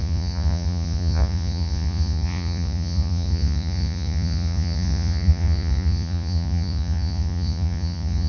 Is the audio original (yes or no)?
no